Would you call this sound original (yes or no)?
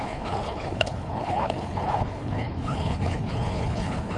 no